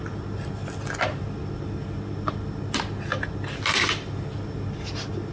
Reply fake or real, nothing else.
real